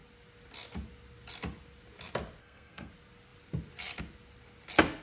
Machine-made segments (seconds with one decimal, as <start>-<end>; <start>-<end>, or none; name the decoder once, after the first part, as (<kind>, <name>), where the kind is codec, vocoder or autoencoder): 2.4-2.9 (codec, SNAC)